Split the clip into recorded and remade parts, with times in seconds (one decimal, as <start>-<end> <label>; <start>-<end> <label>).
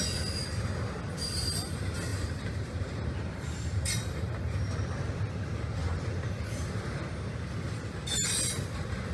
0.0-2.1 recorded; 2.1-4.4 remade; 4.4-5.8 recorded; 5.8-7.0 remade; 7.0-9.1 recorded